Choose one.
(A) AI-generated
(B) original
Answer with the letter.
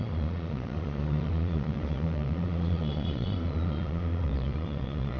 A